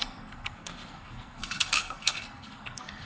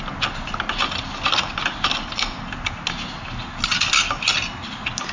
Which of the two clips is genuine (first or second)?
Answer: second